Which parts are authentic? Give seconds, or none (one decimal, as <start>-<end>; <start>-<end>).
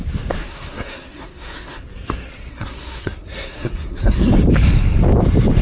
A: 0.0-0.4; 1.8-2.5; 4.3-5.6